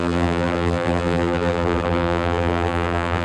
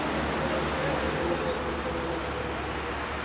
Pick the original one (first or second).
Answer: second